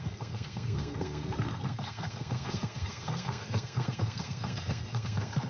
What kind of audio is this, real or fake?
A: fake